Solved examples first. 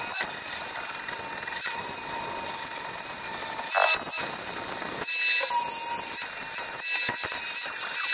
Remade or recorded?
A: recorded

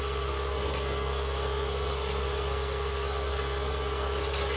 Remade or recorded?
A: remade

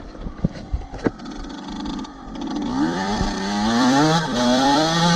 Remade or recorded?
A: remade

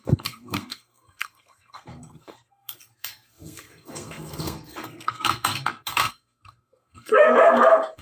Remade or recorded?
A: remade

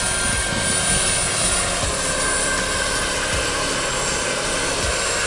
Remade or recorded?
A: recorded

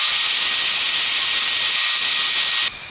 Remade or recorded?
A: recorded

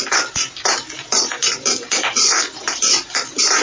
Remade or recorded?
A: recorded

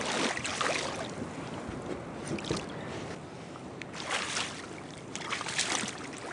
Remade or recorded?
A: recorded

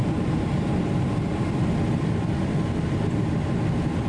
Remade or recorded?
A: recorded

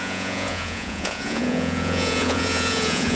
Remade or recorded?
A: remade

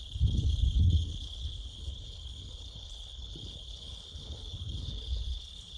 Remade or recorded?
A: remade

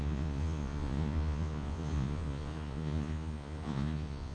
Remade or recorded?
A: remade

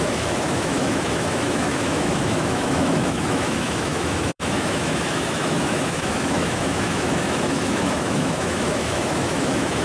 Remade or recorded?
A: remade